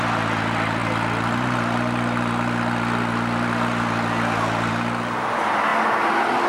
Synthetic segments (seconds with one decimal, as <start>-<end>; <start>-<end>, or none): none

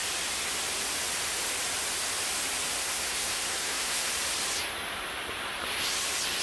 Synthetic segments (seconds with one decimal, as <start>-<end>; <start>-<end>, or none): 2.8-4.1

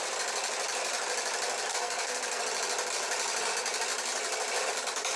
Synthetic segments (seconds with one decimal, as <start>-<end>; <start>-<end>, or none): 1.7-2.4

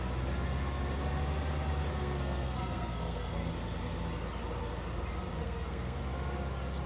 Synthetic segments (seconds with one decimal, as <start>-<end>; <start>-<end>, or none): 1.9-3.5; 5.4-6.0

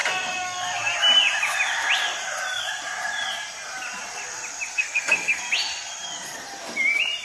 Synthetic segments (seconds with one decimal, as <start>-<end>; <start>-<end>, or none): 4.7-5.4

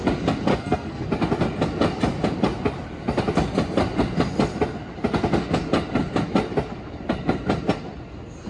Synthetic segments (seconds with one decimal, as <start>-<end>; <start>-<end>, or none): 0.5-1.0

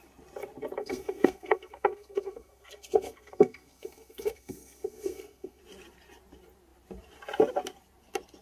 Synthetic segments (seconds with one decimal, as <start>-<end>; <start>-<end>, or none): 0.8-5.6

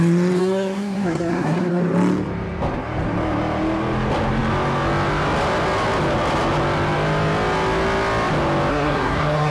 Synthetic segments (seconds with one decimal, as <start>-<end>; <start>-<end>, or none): 0.4-1.8; 8.7-9.5